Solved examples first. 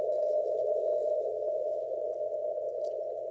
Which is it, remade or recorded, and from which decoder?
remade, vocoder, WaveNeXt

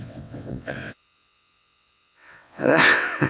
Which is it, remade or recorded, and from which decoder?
remade, vocoder, WaveNeXt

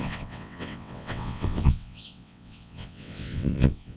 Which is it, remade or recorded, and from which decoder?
remade, vocoder, WaveNeXt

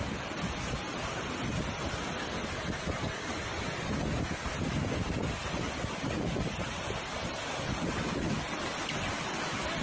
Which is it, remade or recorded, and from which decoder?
recorded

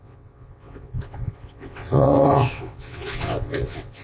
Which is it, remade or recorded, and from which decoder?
remade, vocoder, WaveNeXt